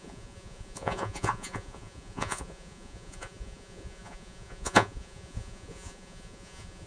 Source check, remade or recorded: remade